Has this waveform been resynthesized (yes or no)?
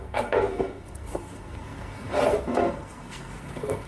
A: yes